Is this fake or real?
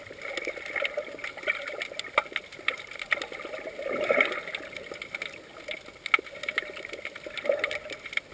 real